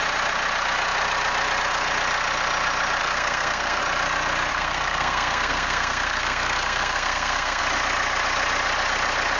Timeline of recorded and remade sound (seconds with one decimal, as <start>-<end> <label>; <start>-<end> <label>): 0.0-3.0 recorded; 3.0-3.8 remade; 3.8-4.5 recorded; 4.5-7.6 remade; 7.6-9.4 recorded